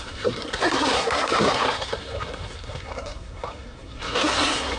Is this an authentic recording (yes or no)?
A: no